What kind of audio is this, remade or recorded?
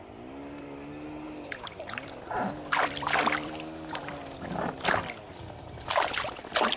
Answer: remade